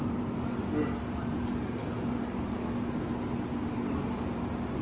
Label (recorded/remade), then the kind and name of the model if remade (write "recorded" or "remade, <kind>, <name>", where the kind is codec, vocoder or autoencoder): recorded